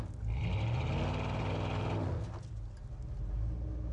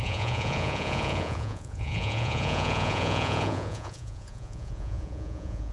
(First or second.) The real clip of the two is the first